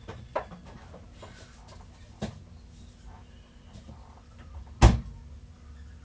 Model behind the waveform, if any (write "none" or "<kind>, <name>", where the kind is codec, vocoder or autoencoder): none